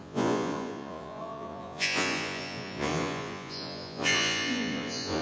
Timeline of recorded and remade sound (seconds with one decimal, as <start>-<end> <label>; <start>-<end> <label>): 0.0-5.2 remade